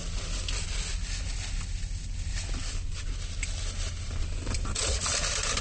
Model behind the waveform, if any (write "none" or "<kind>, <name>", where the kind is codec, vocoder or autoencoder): none